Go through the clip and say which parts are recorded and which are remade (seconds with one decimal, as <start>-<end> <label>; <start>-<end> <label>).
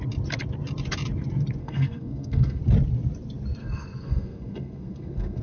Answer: 0.0-1.6 recorded; 1.6-2.6 remade; 2.6-3.6 recorded; 3.6-5.4 remade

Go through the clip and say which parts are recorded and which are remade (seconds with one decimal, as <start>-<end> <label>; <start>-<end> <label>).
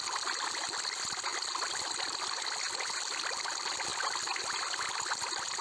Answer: 0.0-5.6 recorded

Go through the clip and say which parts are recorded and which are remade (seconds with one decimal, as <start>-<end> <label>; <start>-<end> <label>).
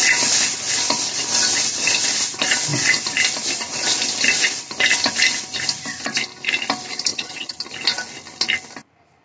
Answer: 0.0-7.1 recorded; 7.1-7.6 remade; 7.6-9.2 recorded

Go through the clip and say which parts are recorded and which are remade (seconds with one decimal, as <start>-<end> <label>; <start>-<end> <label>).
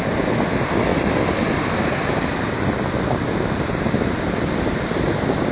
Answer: 0.0-5.5 recorded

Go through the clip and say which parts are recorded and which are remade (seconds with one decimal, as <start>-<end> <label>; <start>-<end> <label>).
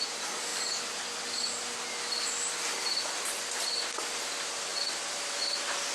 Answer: 0.0-0.5 recorded; 0.5-4.0 remade; 4.0-4.7 recorded; 4.7-5.4 remade; 5.4-5.9 recorded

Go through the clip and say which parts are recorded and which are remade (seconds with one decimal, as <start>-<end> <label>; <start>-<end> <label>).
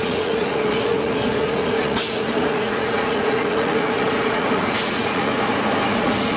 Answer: 0.0-5.3 remade; 5.3-5.9 recorded; 5.9-6.4 remade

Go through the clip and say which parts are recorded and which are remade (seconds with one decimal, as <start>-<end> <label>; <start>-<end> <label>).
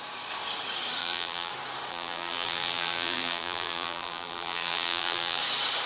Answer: 0.0-1.0 recorded; 1.0-1.5 remade; 1.5-1.9 recorded; 1.9-5.4 remade; 5.4-5.9 recorded